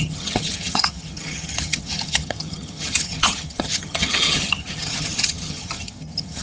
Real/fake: fake